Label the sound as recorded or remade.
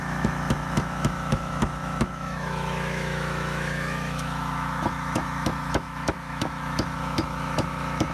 remade